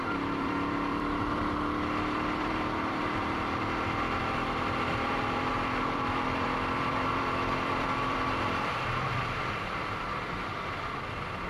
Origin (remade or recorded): remade